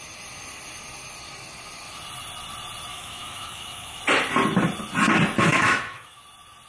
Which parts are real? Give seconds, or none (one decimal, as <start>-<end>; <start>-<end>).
0.0-2.9; 4.0-5.5; 6.2-6.7